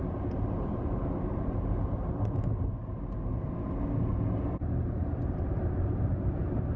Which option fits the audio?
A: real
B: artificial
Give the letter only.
A